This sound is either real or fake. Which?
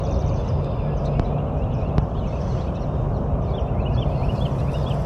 real